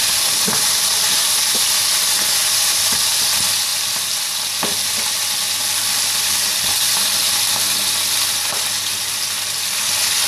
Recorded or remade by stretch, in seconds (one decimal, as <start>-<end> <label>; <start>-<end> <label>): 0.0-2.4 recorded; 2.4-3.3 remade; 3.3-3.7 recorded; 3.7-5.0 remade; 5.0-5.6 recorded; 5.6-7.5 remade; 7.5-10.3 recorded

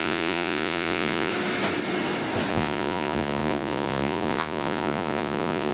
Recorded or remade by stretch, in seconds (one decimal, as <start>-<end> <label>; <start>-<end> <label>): 0.0-1.3 remade; 1.3-2.5 recorded; 2.5-5.7 remade

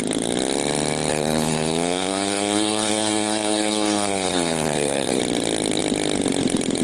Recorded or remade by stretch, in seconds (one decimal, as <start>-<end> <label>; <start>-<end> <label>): 0.0-1.1 recorded; 1.1-5.2 remade; 5.2-6.8 recorded